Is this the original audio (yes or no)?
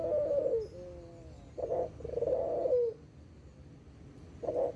yes